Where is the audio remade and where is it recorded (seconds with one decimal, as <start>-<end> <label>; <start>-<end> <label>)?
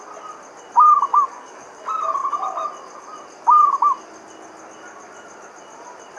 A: 0.0-1.1 recorded; 1.1-1.8 remade; 1.8-6.2 recorded